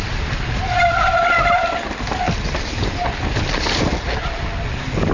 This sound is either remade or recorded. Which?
recorded